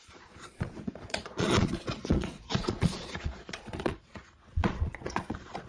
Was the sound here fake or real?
fake